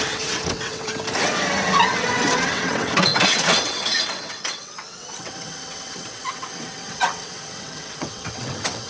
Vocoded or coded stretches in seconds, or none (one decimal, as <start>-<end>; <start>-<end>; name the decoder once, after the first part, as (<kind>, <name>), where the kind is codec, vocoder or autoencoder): 0.0-0.9 (vocoder, WaveNeXt); 1.9-8.9